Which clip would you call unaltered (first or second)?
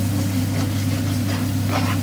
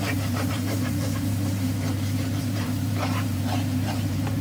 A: first